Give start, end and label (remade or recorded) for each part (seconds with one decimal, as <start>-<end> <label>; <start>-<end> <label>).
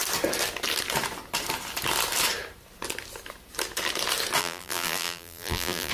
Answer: 0.0-4.4 recorded; 4.4-5.9 remade